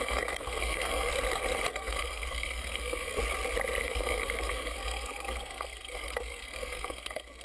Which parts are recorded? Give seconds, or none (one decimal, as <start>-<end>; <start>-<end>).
1.1-1.7; 3.2-3.8